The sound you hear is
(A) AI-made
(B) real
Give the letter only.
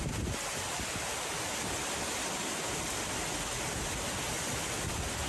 B